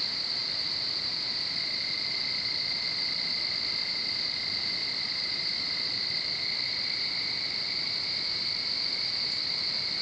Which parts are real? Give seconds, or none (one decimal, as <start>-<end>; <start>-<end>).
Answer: 0.0-10.0

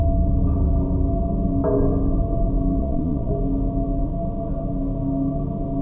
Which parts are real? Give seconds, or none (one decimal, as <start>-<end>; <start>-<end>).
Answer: 0.0-2.8; 3.3-5.8

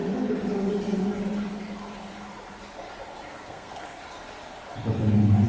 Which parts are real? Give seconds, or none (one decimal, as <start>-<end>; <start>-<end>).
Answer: 0.0-3.3; 3.9-5.5

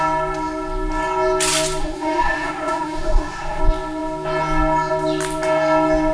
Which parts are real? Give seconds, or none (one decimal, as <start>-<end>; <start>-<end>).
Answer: 0.0-1.8; 3.6-6.1

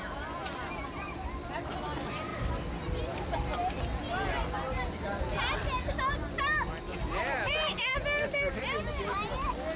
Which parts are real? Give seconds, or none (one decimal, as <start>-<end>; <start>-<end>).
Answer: 0.0-9.8

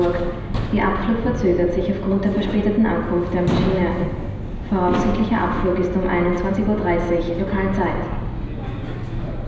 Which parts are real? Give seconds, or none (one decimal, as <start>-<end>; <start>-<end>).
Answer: 0.0-9.5

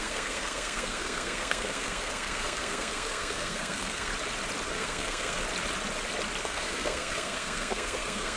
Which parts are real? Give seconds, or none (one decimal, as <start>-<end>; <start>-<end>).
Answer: 4.1-4.7; 5.4-6.4

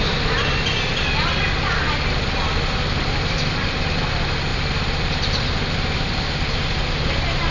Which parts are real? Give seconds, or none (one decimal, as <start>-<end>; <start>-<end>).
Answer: 0.0-7.5